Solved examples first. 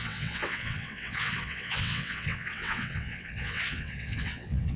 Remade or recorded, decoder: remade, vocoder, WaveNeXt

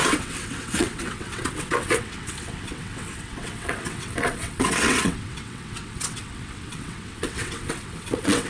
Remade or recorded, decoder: remade, vocoder, WaveNeXt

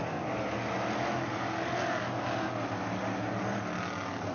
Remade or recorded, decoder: recorded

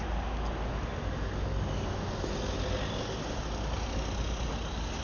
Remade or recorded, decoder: recorded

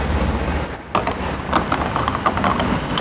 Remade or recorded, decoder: recorded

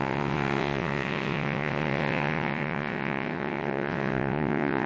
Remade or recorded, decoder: remade, vocoder, WaveNeXt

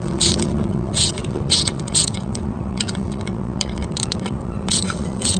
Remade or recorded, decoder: remade, vocoder, WaveNeXt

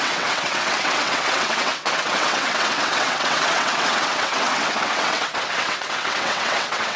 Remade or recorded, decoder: remade, vocoder, WaveNeXt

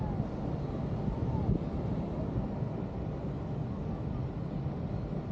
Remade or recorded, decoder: recorded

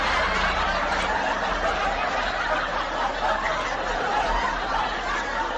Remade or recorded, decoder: recorded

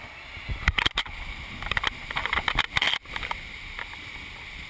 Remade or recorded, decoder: recorded